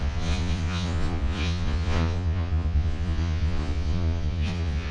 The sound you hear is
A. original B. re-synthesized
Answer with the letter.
B